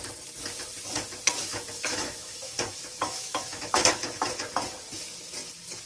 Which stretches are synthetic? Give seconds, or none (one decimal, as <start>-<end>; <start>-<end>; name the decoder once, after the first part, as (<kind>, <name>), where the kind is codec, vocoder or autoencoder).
1.4-4.4 (autoencoder, DAC-VAE)